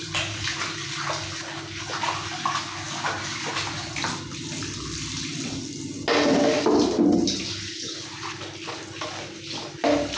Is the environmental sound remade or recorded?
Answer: recorded